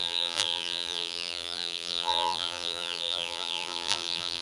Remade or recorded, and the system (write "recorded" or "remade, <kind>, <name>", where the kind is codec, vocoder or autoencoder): remade, vocoder, BigVGAN v2